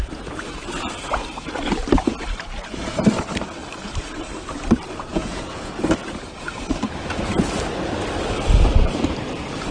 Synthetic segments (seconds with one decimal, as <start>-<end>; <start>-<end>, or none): 5.1-5.9